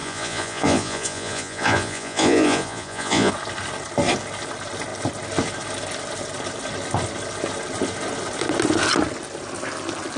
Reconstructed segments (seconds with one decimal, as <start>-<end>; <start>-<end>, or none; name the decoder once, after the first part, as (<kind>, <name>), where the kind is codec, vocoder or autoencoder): 0.0-3.3 (vocoder, Vocos)